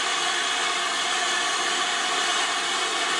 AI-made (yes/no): no